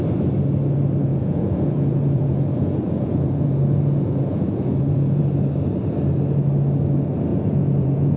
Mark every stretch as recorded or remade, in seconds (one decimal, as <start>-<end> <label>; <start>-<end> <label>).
0.0-1.1 recorded; 1.1-5.2 remade; 5.2-7.3 recorded; 7.3-8.2 remade

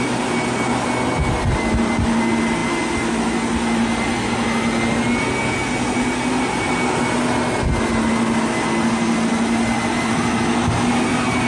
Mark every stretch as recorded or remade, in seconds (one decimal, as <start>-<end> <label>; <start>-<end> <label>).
0.0-11.5 recorded

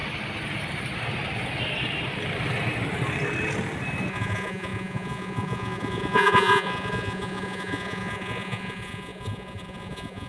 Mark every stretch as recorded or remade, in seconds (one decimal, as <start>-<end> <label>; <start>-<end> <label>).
0.0-4.1 recorded; 4.1-10.3 remade

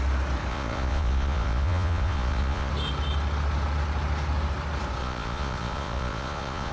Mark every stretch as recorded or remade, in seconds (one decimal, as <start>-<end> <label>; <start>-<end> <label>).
0.0-0.5 recorded; 0.5-2.7 remade; 2.7-5.0 recorded; 5.0-6.7 remade